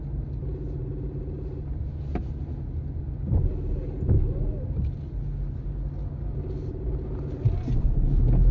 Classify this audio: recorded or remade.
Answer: recorded